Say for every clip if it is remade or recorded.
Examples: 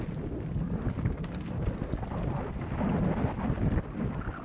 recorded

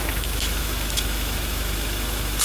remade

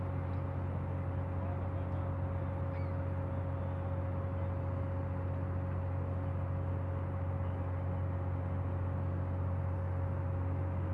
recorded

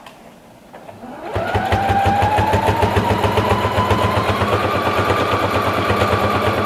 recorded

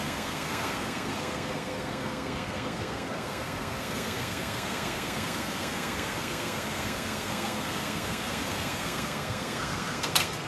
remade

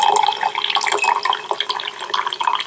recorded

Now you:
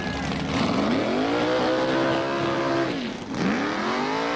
recorded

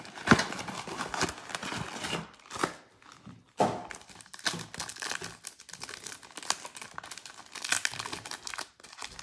recorded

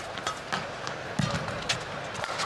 recorded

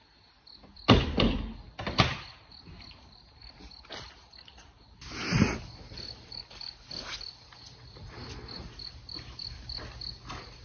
recorded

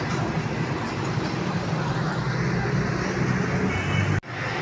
recorded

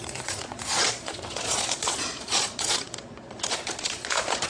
remade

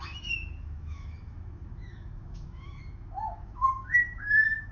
remade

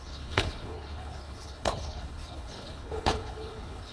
remade